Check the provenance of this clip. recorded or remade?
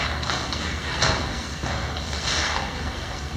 remade